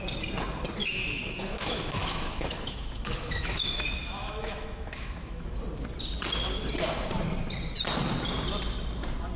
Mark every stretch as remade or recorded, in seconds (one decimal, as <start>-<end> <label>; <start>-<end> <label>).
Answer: 0.0-0.8 recorded; 0.8-5.5 remade; 5.5-9.4 recorded